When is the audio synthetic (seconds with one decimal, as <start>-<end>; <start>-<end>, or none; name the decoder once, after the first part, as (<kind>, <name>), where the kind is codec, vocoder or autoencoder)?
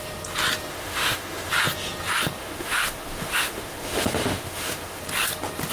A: 0.7-1.5 (autoencoder, DAC-VAE); 2.4-5.0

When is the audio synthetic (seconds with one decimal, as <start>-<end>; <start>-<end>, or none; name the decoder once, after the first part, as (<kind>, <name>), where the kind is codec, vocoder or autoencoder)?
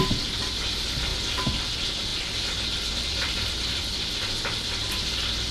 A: 1.1-1.7 (vocoder, BigVGAN v2); 2.1-4.0